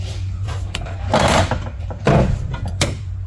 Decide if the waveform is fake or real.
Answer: fake